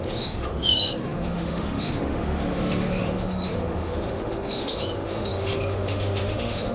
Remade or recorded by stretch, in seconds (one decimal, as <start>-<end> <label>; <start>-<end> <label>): 0.0-6.7 remade